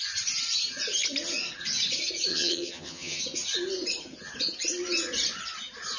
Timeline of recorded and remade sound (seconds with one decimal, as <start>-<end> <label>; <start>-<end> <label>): 0.0-2.3 recorded; 2.3-3.2 remade; 3.2-6.0 recorded